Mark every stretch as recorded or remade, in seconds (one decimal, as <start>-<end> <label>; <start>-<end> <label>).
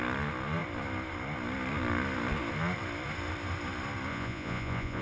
0.0-4.1 recorded; 4.1-5.0 remade